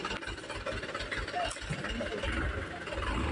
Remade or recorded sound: recorded